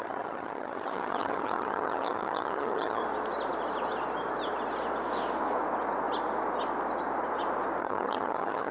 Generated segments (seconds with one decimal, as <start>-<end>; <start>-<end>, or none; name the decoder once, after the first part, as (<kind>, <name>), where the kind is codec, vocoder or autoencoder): 0.0-3.0 (vocoder, HiFi-GAN); 7.8-8.7